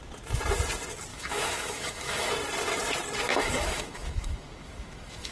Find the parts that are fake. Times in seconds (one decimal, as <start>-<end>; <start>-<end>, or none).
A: 1.1-2.3; 3.3-5.3